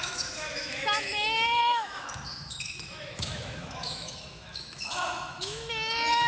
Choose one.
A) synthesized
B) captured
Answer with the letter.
A